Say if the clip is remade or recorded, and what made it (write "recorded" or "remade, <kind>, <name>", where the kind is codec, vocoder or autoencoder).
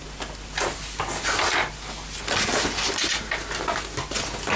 recorded